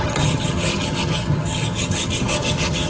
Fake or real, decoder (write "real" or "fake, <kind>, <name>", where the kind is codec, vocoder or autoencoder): fake, vocoder, HiFi-GAN